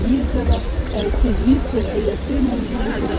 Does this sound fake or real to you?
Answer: fake